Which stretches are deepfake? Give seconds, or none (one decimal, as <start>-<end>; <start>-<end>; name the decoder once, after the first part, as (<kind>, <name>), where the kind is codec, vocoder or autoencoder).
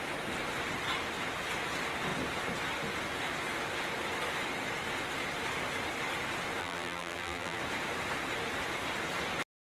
6.6-7.6 (vocoder, BigVGAN v2)